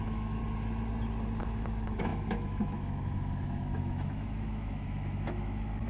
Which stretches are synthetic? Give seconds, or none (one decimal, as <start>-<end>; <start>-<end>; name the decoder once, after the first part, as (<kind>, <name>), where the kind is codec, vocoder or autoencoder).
0.0-0.4 (autoencoder, DAC-VAE); 1.4-5.9